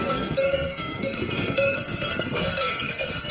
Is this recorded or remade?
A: remade